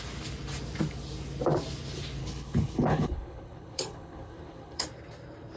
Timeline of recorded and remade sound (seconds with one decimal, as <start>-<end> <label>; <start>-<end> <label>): 0.0-2.2 recorded; 2.2-4.9 remade; 4.9-5.6 recorded